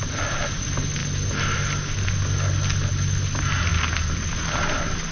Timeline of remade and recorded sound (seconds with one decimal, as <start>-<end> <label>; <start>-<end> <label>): 0.0-5.1 recorded